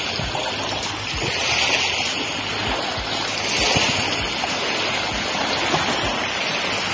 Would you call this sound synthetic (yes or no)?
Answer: no